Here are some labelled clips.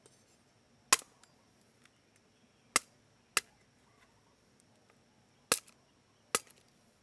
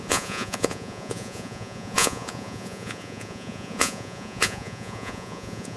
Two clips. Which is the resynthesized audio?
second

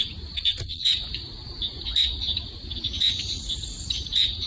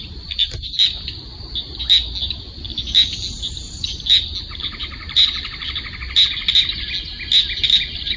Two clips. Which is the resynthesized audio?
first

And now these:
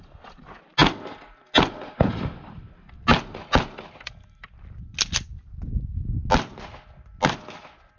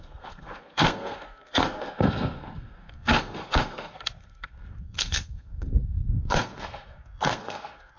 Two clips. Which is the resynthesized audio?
second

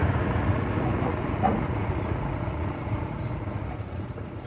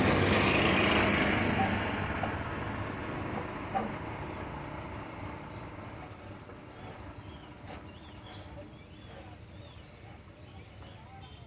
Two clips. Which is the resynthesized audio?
first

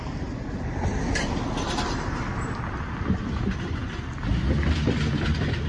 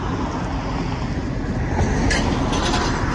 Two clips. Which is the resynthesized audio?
first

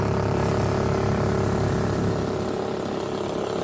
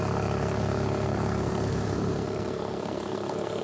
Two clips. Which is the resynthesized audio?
second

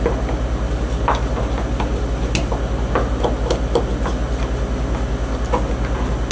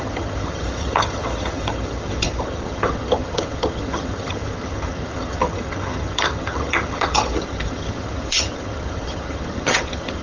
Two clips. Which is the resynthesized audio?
second